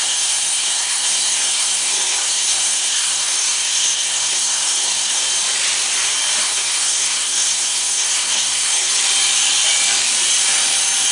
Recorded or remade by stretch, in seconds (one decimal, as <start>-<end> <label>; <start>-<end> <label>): 0.0-5.2 remade; 5.2-6.4 recorded; 6.4-8.9 remade; 8.9-11.1 recorded